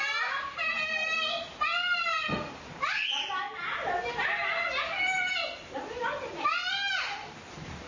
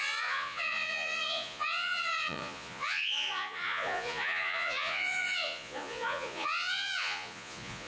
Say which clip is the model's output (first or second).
second